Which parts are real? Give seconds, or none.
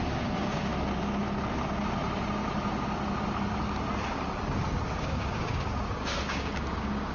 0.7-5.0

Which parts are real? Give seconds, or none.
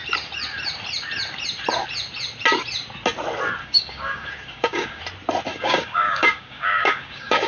0.0-3.6; 5.0-5.5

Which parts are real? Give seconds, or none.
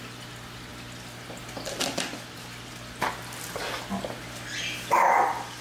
0.0-5.6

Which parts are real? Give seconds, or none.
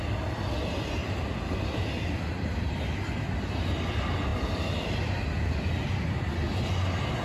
0.0-7.2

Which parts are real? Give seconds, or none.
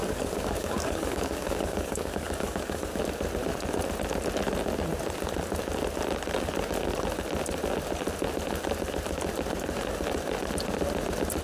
3.0-11.4